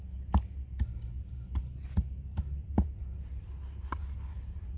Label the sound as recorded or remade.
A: recorded